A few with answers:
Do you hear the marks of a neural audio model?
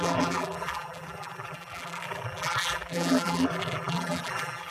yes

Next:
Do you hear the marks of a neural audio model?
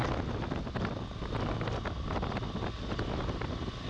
no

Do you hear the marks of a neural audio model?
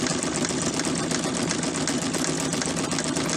no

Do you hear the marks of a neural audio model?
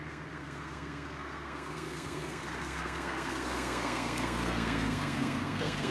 yes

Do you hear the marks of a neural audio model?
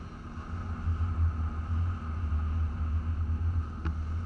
no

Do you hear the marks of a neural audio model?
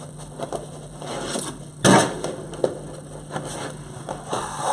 no